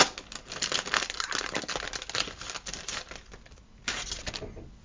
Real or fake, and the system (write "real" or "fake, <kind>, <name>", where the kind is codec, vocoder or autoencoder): real